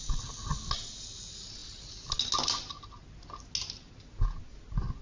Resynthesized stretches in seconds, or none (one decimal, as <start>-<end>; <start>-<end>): none